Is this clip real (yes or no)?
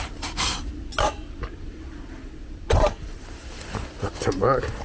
yes